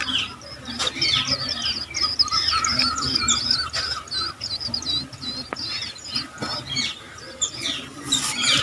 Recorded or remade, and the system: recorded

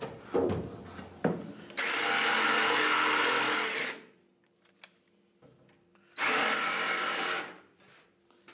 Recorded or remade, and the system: recorded